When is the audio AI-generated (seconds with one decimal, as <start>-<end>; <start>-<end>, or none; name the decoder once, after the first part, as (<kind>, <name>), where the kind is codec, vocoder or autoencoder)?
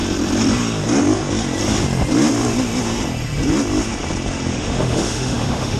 4.5-5.8 (autoencoder, DAC-VAE)